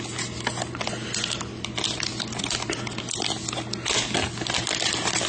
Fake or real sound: real